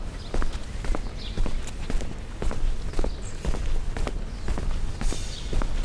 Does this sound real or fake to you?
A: real